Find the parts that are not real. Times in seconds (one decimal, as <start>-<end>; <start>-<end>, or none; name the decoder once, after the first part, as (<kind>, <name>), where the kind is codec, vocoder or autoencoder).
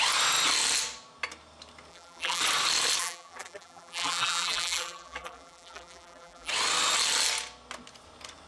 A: 1.9-2.4 (vocoder, BigVGAN v2); 3.0-6.5